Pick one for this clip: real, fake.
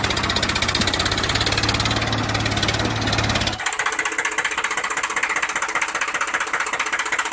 real